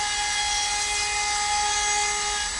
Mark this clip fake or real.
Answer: real